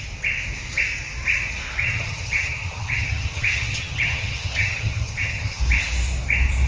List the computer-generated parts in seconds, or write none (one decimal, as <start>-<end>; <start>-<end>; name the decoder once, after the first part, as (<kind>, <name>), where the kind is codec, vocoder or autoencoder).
1.8-5.6 (vocoder, HiFi-GAN)